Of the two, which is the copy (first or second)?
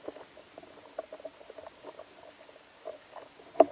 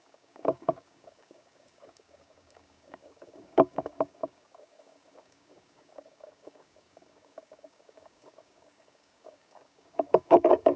second